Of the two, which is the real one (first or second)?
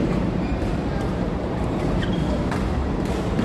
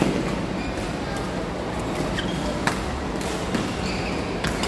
second